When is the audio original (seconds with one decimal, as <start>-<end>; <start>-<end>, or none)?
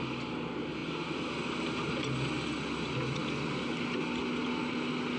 0.0-5.2